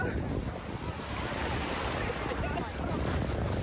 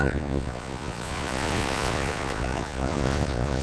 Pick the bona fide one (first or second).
first